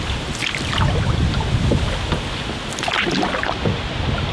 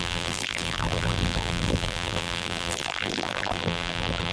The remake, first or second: second